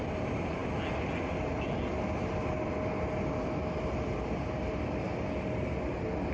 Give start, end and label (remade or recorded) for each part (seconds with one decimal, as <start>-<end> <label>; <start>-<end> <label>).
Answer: 0.0-6.3 recorded